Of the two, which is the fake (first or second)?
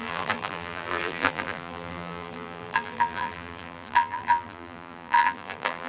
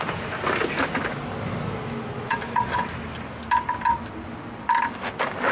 first